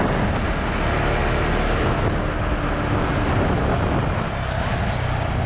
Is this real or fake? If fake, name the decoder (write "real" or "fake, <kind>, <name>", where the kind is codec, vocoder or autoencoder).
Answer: real